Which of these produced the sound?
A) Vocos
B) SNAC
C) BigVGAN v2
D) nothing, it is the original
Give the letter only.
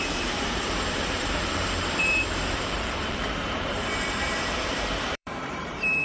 C